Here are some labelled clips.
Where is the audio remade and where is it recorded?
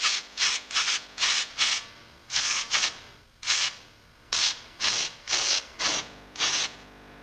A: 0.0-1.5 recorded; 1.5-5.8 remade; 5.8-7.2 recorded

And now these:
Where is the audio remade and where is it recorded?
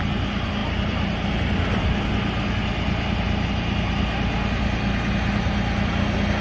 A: 0.0-6.4 recorded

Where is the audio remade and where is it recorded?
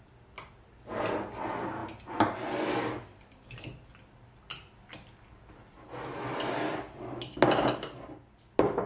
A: 0.0-8.9 recorded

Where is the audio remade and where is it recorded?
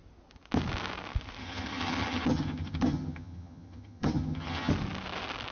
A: 0.0-1.4 recorded; 1.4-4.7 remade; 4.7-5.5 recorded